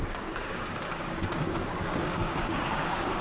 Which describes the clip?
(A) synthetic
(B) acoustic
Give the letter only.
A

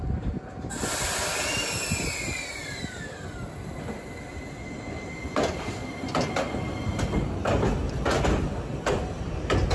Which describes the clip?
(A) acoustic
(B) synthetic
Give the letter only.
A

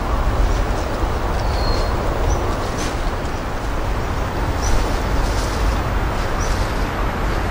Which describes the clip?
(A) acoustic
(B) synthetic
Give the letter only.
A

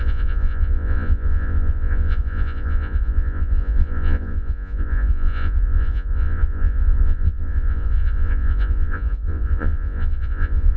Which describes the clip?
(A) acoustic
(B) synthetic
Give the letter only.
B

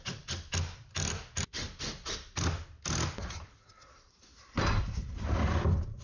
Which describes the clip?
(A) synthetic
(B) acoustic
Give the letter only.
B